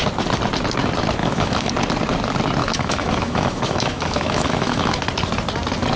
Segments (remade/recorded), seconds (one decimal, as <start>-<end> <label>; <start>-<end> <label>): 0.0-1.2 recorded; 1.2-1.7 remade; 1.7-2.6 recorded; 2.6-5.0 remade; 5.0-6.0 recorded